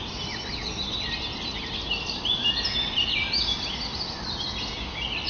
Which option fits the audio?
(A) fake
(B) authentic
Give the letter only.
B